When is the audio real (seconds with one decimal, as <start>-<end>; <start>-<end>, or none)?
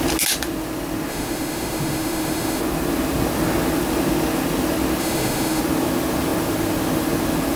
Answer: 0.0-1.1; 2.6-5.0; 5.6-7.6